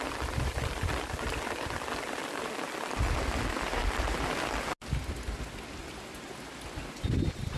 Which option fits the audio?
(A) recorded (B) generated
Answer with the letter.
A